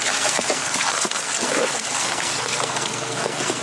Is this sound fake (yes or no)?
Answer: yes